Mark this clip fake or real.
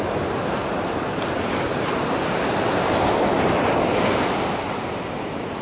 real